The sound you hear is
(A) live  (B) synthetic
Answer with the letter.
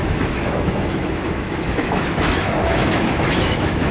B